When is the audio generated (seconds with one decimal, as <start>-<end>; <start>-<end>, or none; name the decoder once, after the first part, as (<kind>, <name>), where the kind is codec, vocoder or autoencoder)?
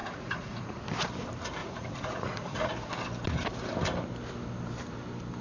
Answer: 0.0-0.8 (vocoder, Vocos); 1.6-2.7